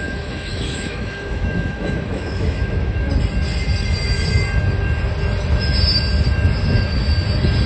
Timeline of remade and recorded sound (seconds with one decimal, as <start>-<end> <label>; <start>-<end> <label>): 0.0-3.1 remade; 3.1-7.7 recorded